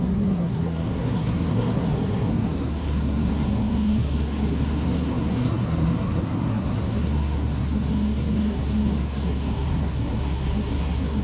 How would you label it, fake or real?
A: fake